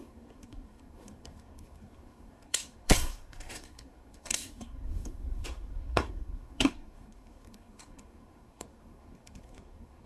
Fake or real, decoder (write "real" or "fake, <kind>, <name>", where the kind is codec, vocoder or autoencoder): fake, codec, SNAC